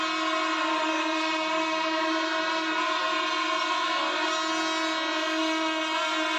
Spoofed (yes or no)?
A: no